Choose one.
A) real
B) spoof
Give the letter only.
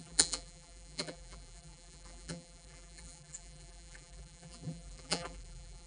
B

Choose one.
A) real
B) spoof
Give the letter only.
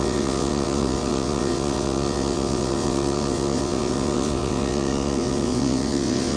B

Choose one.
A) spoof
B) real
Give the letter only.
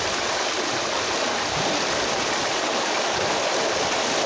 B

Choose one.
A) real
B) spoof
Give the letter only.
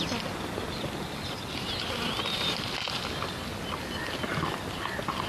A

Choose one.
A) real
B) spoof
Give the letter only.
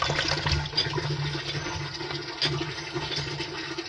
A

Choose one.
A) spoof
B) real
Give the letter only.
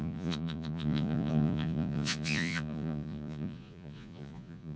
A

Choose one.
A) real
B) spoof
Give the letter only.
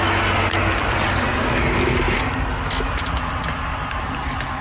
A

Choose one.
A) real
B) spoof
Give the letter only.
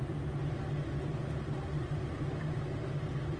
A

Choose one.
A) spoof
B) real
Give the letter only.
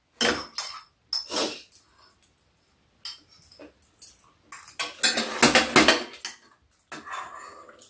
B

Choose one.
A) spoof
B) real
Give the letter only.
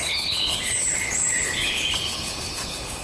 A